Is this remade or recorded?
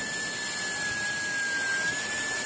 recorded